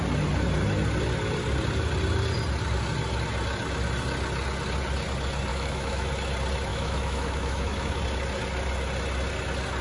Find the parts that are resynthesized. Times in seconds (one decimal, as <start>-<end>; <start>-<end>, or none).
5.5-6.1; 6.7-8.0